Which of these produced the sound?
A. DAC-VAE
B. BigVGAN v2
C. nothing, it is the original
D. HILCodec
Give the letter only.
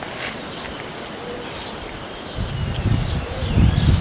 C